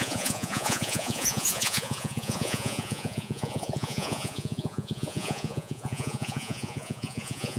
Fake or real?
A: fake